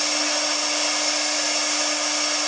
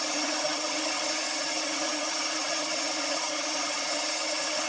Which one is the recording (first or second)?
first